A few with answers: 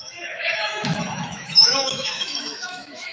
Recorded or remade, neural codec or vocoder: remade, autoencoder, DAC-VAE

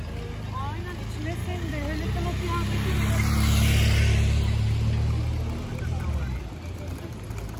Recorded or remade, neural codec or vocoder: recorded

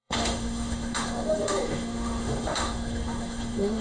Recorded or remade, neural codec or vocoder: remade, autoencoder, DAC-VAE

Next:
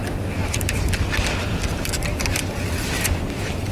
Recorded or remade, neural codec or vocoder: recorded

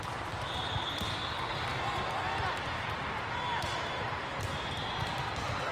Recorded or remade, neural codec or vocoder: recorded